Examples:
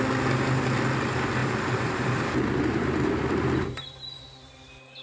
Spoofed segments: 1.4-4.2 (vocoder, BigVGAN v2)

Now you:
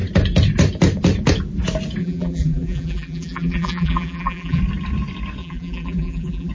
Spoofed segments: 2.0-4.6 (vocoder, BigVGAN v2); 5.4-6.5

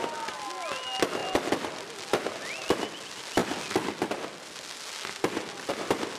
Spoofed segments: none